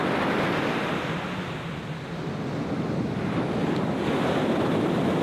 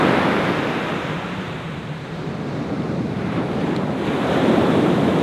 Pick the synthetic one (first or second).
second